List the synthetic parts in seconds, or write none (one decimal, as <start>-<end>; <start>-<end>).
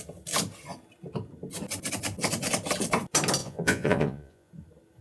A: 3.4-4.5